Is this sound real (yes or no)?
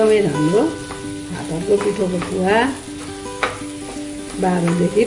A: yes